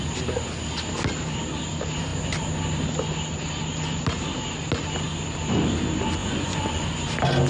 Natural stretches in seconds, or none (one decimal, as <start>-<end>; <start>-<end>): 0.0-6.2; 7.0-7.5